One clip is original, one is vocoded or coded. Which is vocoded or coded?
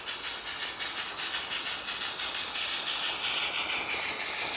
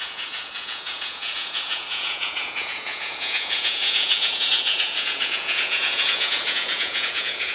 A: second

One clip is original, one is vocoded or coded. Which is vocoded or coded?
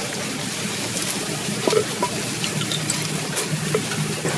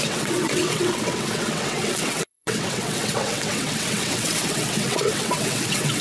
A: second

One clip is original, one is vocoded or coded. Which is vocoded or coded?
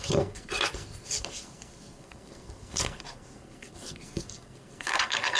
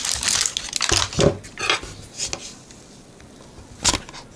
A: first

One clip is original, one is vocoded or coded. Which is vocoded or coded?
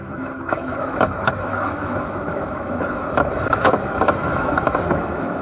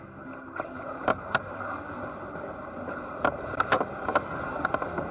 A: first